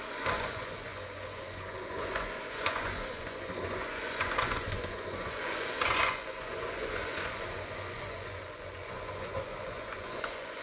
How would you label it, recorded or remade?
remade